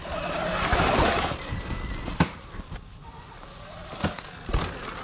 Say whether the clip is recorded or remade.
recorded